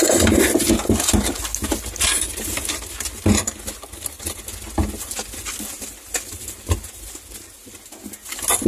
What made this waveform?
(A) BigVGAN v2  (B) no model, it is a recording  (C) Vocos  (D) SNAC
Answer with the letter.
B